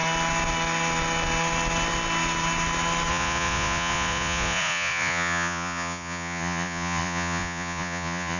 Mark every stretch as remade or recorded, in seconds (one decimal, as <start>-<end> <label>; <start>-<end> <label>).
0.0-3.1 recorded; 3.1-8.4 remade